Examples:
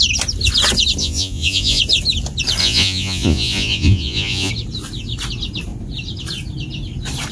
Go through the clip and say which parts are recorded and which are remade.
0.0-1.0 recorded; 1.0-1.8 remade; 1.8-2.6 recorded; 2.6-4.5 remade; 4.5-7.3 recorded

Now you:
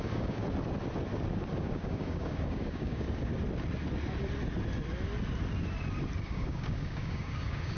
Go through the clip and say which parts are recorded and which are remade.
0.0-0.4 remade; 0.4-1.6 recorded; 1.6-3.3 remade; 3.3-6.2 recorded; 6.2-7.8 remade

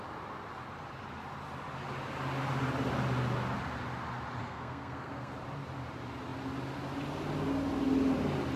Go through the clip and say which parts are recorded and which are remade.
0.0-4.4 recorded; 4.4-5.3 remade; 5.3-8.6 recorded

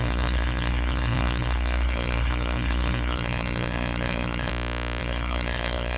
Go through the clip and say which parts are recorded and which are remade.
0.0-4.5 remade; 4.5-5.0 recorded; 5.0-6.0 remade

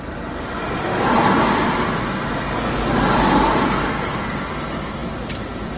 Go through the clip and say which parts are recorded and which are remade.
0.0-3.9 recorded; 3.9-4.4 remade; 4.4-5.8 recorded

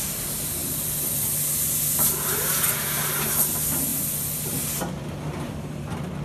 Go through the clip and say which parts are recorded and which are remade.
0.0-6.2 recorded